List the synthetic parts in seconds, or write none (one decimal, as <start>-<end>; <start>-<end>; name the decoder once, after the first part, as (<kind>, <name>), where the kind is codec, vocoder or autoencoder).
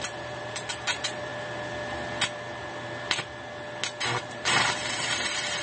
0.0-1.3 (vocoder, BigVGAN v2); 4.0-5.6